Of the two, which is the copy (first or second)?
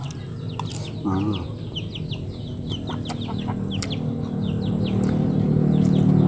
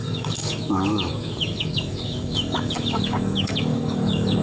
second